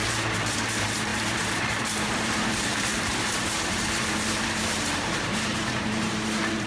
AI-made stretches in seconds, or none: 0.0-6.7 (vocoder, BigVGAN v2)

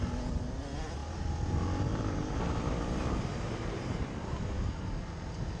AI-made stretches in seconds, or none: none

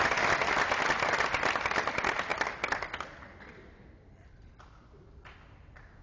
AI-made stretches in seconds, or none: none

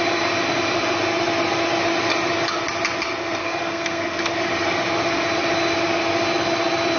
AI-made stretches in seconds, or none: 3.4-4.5 (codec, SNAC)

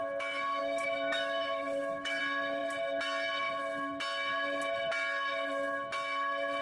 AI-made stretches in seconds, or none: 0.6-2.2 (autoencoder, DAC-VAE)

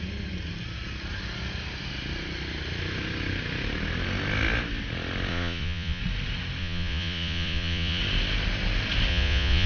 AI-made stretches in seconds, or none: 5.3-6.0 (vocoder, Vocos); 6.6-8.0; 9.1-9.7

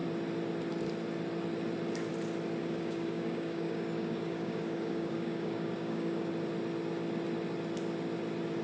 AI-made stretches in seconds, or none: 2.6-6.3 (codec, DAC)